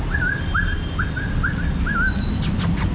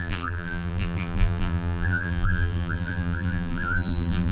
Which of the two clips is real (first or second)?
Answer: first